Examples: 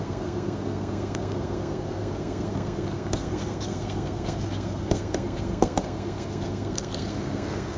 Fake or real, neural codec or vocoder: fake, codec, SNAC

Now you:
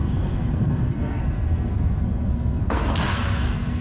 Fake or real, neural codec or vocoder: fake, codec, SNAC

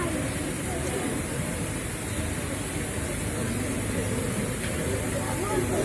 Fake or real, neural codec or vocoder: real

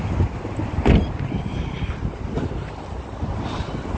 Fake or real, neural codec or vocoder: real